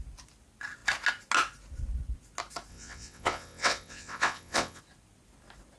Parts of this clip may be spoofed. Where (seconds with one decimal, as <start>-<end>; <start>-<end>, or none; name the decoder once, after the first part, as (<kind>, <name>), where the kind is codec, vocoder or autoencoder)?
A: 2.7-4.8 (vocoder, WaveNeXt)